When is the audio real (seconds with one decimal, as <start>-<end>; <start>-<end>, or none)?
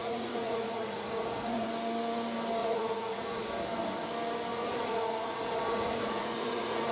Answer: 1.7-2.6; 3.4-4.5